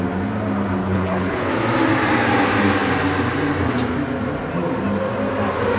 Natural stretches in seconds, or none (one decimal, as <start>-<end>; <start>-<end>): 0.0-0.8; 1.5-5.8